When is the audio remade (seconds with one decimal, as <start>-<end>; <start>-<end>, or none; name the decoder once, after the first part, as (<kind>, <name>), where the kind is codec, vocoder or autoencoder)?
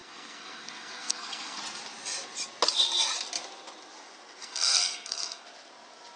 0.0-1.6 (codec, SNAC); 4.4-5.4